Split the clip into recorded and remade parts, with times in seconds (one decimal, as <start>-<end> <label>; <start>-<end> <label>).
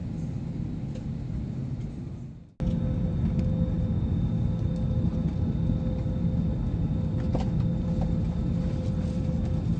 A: 0.0-9.8 recorded